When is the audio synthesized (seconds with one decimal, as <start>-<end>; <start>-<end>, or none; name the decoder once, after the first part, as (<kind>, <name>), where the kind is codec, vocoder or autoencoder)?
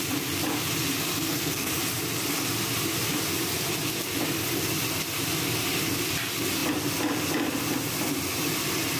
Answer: 1.1-1.8 (codec, SNAC)